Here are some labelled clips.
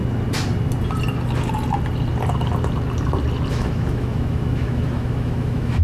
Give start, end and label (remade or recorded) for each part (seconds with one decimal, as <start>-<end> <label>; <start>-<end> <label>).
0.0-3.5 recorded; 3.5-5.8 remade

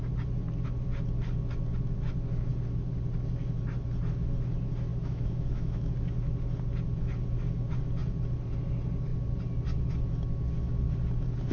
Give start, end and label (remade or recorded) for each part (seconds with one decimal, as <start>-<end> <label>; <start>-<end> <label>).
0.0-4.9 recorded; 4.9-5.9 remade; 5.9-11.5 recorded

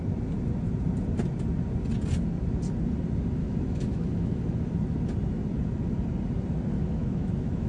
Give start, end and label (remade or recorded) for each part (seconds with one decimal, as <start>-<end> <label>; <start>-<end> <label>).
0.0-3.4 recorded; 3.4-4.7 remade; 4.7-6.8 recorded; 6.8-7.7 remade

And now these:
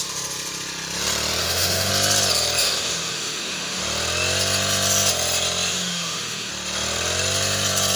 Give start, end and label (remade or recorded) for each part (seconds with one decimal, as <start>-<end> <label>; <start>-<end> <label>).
0.0-1.4 recorded; 1.4-1.9 remade; 1.9-2.6 recorded; 2.6-3.8 remade; 3.8-5.7 recorded; 5.7-6.5 remade; 6.5-8.0 recorded

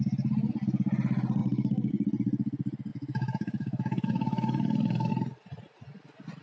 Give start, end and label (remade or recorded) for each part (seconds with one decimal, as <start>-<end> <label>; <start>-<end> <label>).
0.0-1.4 recorded; 1.4-1.9 remade; 1.9-2.9 recorded; 2.9-5.1 remade; 5.1-6.4 recorded

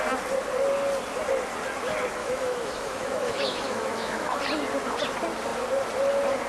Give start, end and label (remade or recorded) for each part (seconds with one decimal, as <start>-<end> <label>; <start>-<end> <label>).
0.0-2.2 recorded; 2.2-4.4 remade; 4.4-6.5 recorded